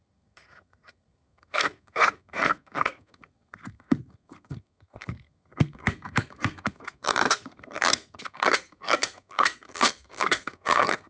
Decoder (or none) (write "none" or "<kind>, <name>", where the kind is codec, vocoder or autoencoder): codec, SNAC